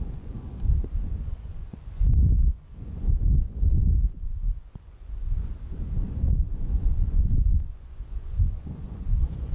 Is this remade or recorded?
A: remade